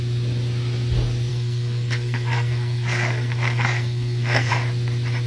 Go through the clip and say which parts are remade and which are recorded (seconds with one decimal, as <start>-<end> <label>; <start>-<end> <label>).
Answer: 0.0-1.3 recorded; 1.3-4.5 remade; 4.5-5.3 recorded